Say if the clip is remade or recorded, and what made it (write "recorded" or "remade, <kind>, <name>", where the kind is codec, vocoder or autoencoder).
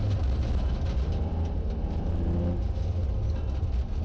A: recorded